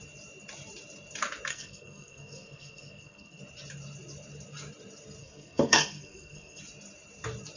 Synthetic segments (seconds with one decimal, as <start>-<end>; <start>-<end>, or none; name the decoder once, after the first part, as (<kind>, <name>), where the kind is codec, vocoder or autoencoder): 1.5-3.4 (codec, SNAC); 5.2-6.6